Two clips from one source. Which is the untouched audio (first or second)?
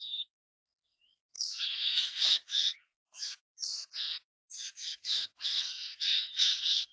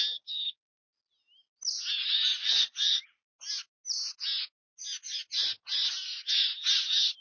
second